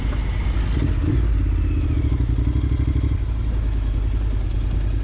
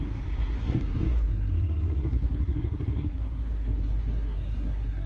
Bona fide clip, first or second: first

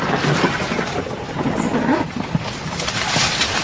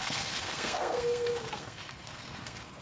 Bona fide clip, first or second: first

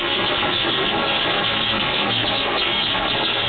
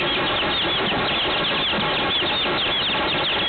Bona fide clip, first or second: second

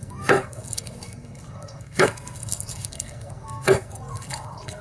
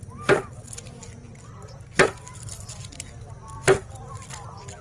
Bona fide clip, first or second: second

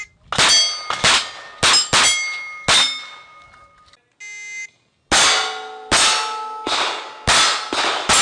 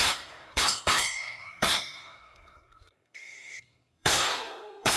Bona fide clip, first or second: first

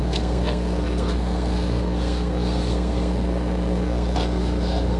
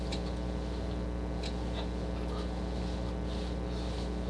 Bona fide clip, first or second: second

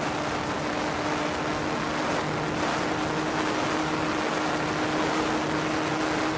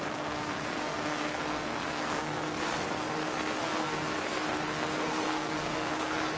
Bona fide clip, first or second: first